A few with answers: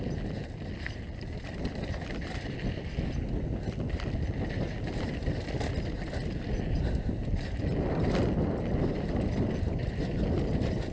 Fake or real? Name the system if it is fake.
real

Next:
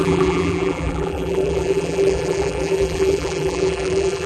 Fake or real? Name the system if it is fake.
fake, vocoder, BigVGAN v2